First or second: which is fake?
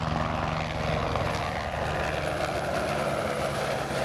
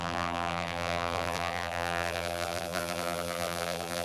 second